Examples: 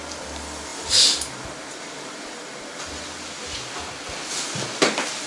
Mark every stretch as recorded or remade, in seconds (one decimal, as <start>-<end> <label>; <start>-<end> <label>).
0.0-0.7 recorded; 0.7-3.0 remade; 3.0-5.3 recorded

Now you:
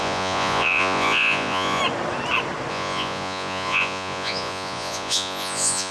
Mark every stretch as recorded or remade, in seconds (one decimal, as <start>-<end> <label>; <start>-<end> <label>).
0.0-1.8 remade; 1.8-2.7 recorded; 2.7-5.9 remade

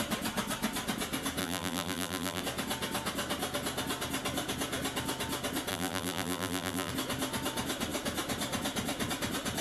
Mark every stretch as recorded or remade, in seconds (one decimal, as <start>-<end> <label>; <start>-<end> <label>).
0.0-1.4 recorded; 1.4-2.4 remade; 2.4-5.7 recorded; 5.7-6.9 remade; 6.9-9.6 recorded

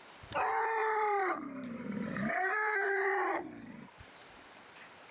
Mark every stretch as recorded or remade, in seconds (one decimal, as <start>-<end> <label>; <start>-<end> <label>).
0.0-0.8 recorded; 0.8-3.9 remade; 3.9-5.1 recorded